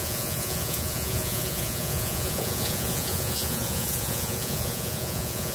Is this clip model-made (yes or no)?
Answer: yes